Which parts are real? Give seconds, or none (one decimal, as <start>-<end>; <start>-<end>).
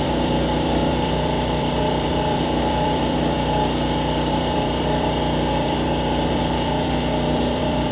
none